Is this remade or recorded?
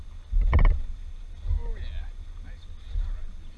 recorded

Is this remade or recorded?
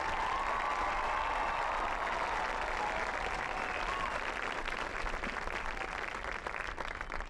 recorded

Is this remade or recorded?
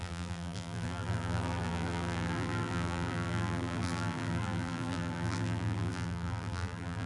remade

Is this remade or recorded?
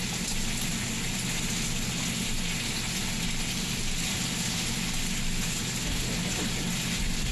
recorded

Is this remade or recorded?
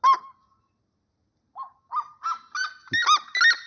recorded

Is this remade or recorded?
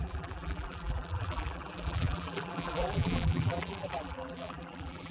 remade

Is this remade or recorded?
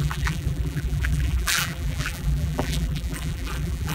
remade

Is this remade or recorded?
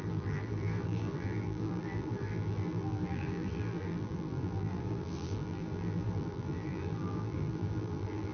remade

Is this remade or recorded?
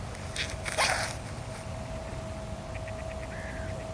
recorded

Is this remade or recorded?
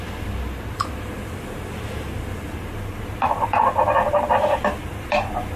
recorded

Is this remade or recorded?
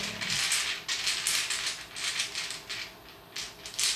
recorded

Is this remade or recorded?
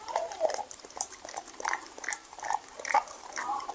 remade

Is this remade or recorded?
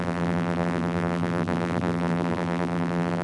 remade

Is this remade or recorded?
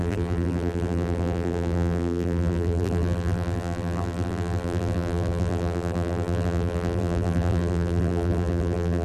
remade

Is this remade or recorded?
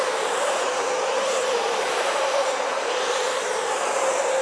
remade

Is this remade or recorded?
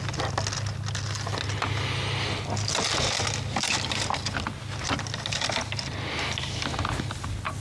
recorded